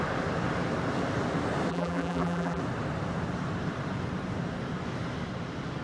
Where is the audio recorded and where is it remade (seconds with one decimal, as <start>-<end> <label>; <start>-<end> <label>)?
0.0-1.7 recorded; 1.7-2.6 remade; 2.6-5.8 recorded